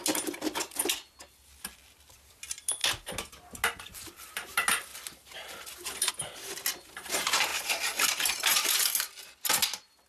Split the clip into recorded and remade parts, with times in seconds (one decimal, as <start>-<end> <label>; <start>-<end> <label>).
0.0-4.9 recorded; 4.9-6.1 remade; 6.1-7.5 recorded; 7.5-9.4 remade; 9.4-10.1 recorded